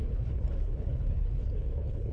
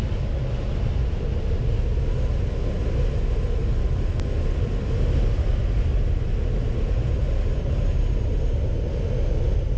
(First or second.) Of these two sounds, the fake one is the first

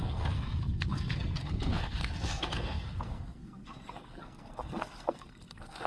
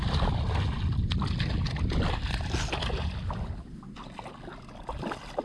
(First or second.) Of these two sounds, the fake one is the first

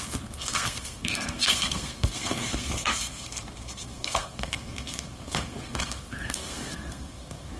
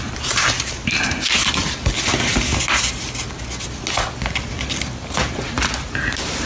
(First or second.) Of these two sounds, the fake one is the first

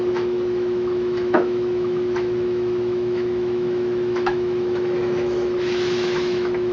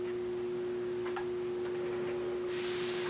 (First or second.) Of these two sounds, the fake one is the first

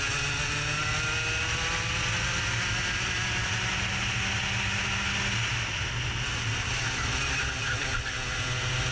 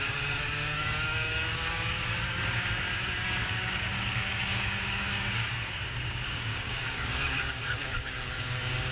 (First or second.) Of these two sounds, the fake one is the second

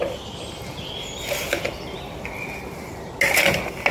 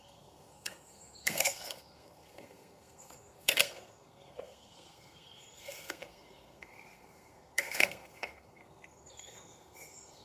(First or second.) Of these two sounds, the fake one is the second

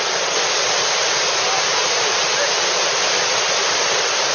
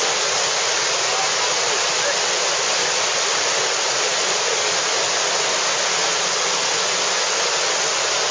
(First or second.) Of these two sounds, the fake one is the first